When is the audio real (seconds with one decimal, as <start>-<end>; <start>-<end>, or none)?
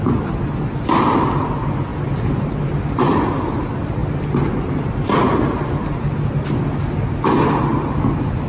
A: 0.0-8.5